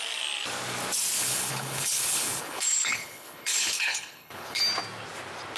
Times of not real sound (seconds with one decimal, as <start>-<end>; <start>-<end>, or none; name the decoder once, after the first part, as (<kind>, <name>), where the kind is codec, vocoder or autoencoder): 1.2-4.6 (codec, HILCodec)